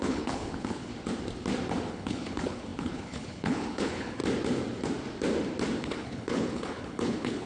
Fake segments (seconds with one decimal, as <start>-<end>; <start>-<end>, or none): 0.0-0.9; 1.9-4.2; 5.8-7.5